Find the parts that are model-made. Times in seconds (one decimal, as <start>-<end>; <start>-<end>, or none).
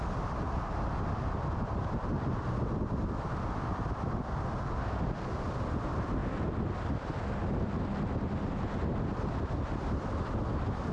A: none